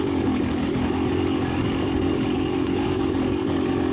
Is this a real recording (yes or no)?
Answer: no